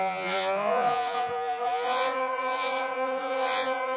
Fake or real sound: fake